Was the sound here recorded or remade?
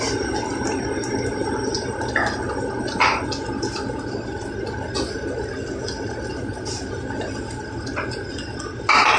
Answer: recorded